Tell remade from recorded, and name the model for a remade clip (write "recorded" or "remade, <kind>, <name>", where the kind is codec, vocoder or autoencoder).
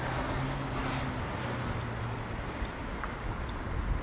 recorded